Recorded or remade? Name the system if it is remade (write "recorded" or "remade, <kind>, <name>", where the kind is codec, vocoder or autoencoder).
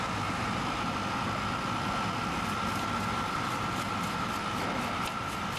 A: recorded